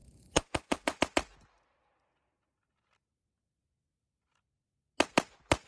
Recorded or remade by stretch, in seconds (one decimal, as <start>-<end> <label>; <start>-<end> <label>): 0.0-1.0 remade; 1.0-5.7 recorded